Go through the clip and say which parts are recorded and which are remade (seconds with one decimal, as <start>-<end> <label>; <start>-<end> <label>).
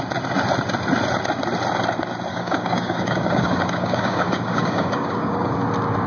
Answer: 0.0-2.3 recorded; 2.3-5.5 remade; 5.5-6.1 recorded